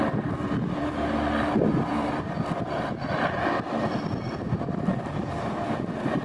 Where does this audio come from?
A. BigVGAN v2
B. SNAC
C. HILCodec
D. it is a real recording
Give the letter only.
A